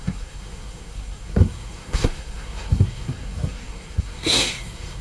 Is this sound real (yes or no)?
no